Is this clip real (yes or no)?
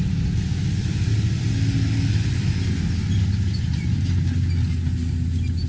yes